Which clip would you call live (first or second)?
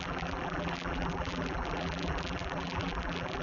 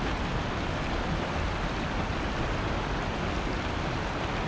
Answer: second